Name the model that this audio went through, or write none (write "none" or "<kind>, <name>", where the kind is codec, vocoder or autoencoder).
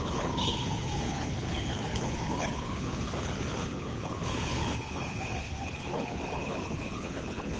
codec, HILCodec